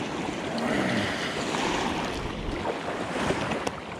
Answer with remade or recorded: recorded